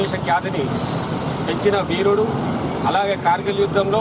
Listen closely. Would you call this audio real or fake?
real